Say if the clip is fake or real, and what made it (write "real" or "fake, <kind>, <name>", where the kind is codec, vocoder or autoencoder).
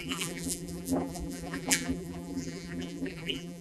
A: fake, vocoder, BigVGAN v2